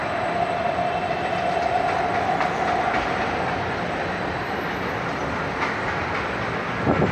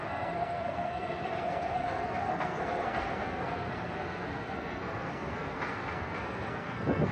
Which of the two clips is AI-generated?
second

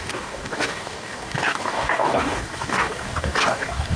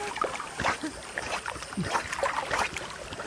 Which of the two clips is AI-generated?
first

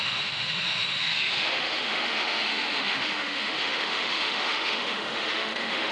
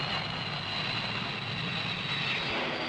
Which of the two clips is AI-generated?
first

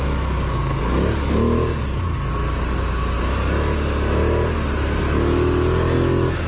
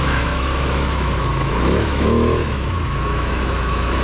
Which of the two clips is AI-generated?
second